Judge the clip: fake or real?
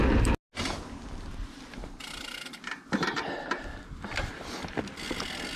real